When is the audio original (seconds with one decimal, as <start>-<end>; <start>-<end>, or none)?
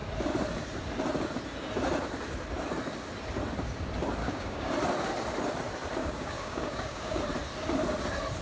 0.0-4.2; 4.7-6.0; 7.2-8.4